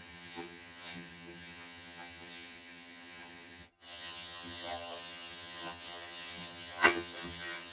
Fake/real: fake